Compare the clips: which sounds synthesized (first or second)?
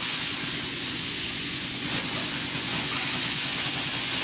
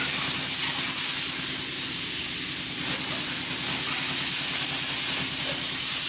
first